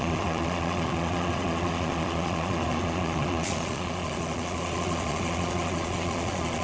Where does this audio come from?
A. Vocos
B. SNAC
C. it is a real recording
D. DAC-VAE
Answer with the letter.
A